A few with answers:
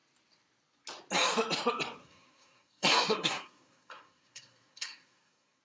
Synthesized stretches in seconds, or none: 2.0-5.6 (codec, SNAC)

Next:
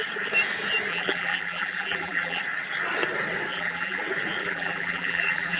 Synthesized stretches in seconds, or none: 0.9-2.4 (vocoder, BigVGAN v2); 3.5-4.0; 4.4-5.6

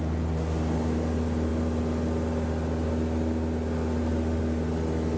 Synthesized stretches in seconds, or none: none

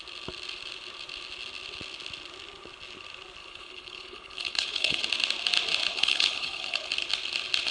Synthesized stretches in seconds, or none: 3.4-5.0 (codec, HILCodec); 5.9-6.9